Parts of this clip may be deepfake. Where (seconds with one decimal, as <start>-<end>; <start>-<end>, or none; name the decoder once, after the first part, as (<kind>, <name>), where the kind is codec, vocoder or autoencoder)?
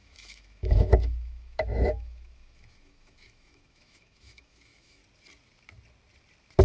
0.0-5.0 (autoencoder, DAC-VAE)